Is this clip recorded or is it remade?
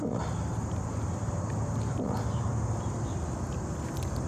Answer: recorded